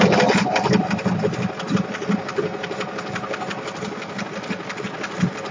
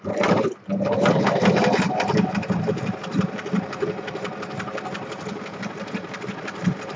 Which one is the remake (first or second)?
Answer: second